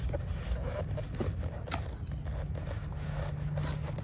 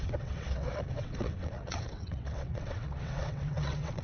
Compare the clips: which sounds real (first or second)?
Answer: first